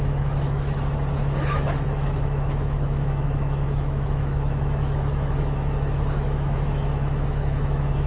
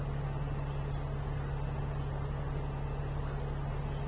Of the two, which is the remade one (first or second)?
first